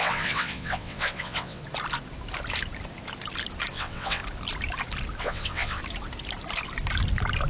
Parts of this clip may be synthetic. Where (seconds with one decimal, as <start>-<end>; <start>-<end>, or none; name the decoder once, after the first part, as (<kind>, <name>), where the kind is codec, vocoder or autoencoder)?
0.0-1.6 (vocoder, WaveNeXt); 3.7-4.2; 5.2-5.8